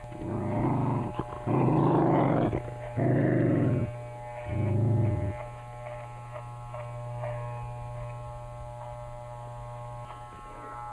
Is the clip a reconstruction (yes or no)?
no